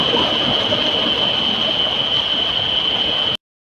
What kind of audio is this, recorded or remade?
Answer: recorded